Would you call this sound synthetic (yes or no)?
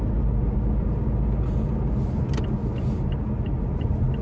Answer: no